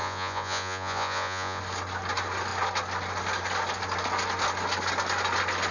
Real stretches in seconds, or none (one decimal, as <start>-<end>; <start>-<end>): 1.6-5.7